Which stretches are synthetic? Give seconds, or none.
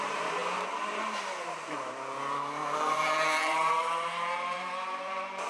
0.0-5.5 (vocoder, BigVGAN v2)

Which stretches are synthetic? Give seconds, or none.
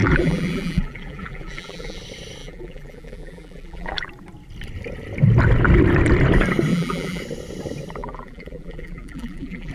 0.0-2.0 (vocoder, BigVGAN v2); 2.4-4.1; 6.7-7.2; 8.0-9.7